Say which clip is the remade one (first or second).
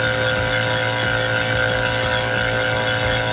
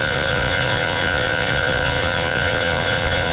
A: second